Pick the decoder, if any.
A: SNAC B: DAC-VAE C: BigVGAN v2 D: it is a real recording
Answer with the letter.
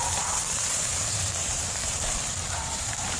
C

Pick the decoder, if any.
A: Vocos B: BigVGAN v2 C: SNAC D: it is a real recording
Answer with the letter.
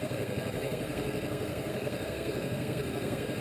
C